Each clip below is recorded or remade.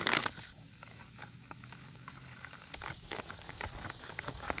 remade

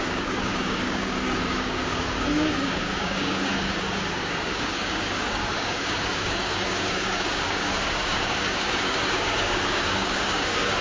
remade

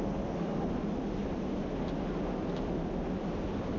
recorded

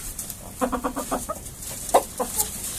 recorded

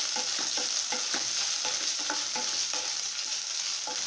recorded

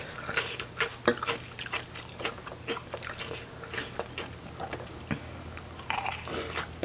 recorded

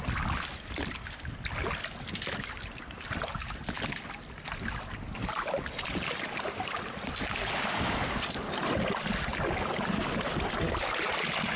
recorded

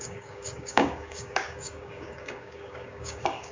remade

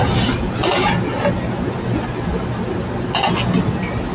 recorded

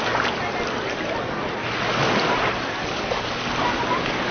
recorded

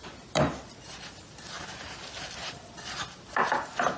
recorded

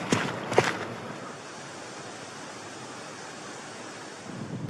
recorded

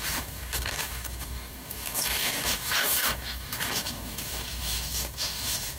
remade